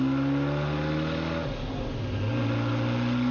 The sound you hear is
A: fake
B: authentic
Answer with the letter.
B